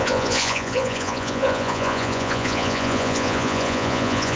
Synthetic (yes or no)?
yes